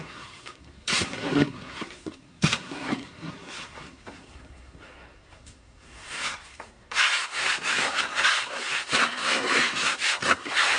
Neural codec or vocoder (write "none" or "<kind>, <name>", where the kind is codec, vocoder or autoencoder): codec, SNAC